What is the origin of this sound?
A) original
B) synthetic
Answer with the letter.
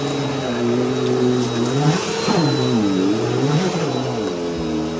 A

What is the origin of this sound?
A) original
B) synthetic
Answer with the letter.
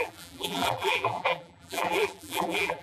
B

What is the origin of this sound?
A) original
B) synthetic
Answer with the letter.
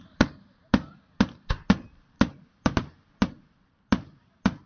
A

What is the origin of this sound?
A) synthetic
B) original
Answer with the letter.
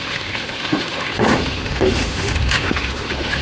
A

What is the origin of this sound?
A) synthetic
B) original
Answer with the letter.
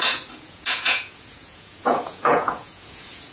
A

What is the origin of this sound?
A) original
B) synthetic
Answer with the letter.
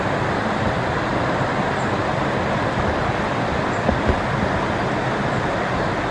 A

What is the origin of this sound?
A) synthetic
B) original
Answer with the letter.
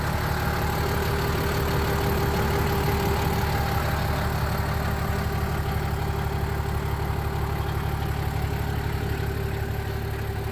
B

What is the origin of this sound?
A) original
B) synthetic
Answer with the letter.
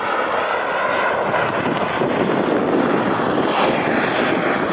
A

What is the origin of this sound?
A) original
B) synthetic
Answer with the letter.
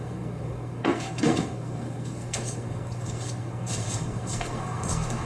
B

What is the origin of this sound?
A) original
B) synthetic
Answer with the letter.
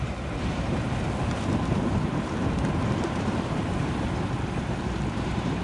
B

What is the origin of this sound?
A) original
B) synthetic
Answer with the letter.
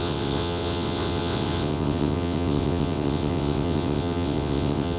B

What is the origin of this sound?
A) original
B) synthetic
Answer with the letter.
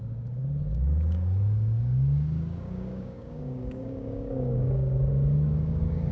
B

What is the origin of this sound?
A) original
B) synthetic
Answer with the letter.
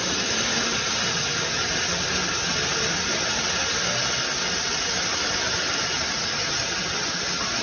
A